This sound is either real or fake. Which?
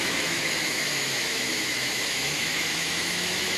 fake